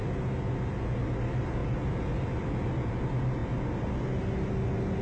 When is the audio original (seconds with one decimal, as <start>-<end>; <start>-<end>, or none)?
0.0-5.0

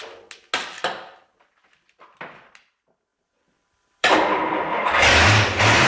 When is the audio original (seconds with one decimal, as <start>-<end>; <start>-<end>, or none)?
0.0-3.1; 4.4-5.9

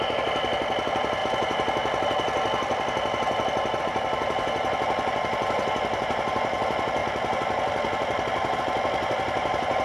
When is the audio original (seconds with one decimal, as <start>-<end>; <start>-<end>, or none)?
1.2-3.8; 7.0-8.6

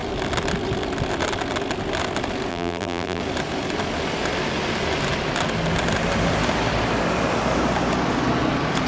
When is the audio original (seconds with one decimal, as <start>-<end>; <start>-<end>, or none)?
0.0-2.5; 3.2-8.9

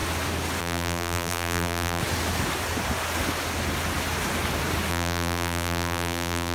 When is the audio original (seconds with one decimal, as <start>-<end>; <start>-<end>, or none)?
0.0-0.6; 2.0-4.9